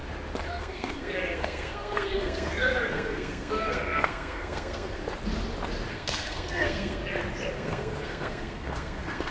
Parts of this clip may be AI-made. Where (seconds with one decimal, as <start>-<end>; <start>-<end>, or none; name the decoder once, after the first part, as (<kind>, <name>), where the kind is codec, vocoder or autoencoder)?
0.5-5.0 (codec, SNAC); 5.9-7.0; 7.5-9.3